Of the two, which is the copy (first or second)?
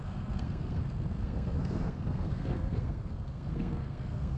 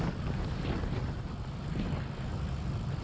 first